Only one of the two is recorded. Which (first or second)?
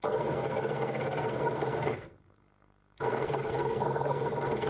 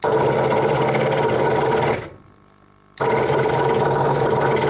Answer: second